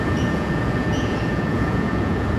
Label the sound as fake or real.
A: fake